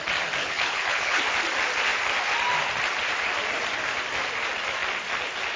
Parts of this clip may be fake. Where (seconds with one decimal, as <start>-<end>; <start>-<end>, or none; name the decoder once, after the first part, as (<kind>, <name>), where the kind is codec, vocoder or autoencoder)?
0.4-1.2 (codec, HILCodec)